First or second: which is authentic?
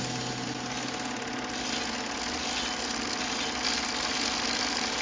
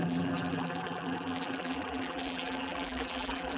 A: first